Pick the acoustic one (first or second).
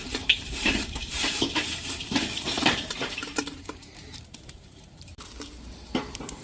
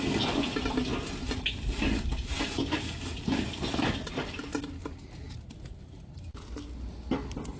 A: second